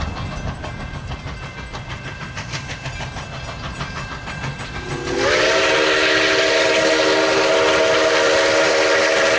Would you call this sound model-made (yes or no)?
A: no